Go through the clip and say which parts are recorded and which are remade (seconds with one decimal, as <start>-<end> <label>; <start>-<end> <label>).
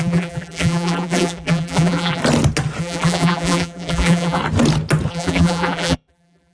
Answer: 0.0-2.2 remade; 2.2-2.8 recorded; 2.8-4.4 remade; 4.4-5.1 recorded; 5.1-6.5 remade